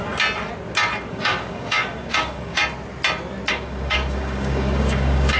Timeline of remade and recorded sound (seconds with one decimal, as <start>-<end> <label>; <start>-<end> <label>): 0.0-1.1 recorded; 1.1-2.6 remade; 2.6-3.5 recorded; 3.5-5.4 remade